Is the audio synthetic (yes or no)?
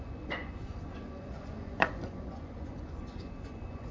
yes